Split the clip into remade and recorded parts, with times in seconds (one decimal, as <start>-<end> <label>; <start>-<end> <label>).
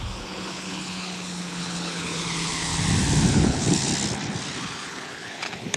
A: 0.0-2.7 remade; 2.7-3.3 recorded; 3.3-3.9 remade; 3.9-4.6 recorded; 4.6-5.8 remade